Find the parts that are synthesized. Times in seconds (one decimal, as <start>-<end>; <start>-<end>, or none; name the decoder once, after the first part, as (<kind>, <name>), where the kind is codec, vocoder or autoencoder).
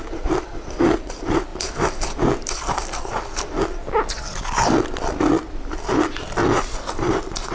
0.0-1.5 (vocoder, BigVGAN v2); 6.0-6.4